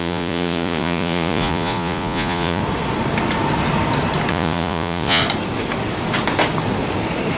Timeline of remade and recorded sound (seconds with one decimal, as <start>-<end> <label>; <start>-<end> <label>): 0.0-2.6 remade; 2.6-4.3 recorded; 4.3-5.2 remade; 5.2-7.4 recorded